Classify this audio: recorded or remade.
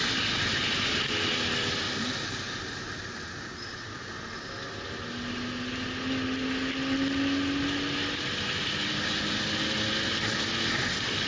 recorded